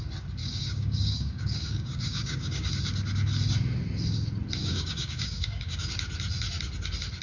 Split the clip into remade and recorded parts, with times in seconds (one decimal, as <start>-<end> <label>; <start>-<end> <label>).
0.0-0.4 recorded; 0.4-2.7 remade; 2.7-4.6 recorded; 4.6-5.9 remade; 5.9-7.2 recorded